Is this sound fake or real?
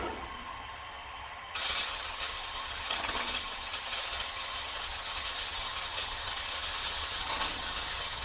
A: fake